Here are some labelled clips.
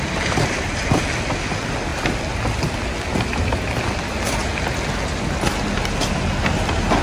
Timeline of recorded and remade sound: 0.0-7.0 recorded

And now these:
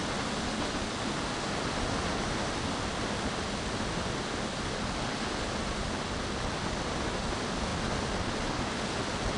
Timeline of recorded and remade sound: 0.0-9.4 recorded